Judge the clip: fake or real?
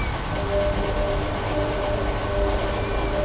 real